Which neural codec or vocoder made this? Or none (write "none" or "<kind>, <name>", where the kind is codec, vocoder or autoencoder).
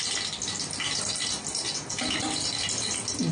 none